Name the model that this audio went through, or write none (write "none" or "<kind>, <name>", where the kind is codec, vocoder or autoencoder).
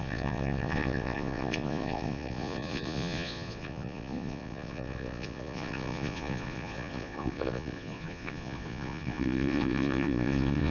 vocoder, Vocos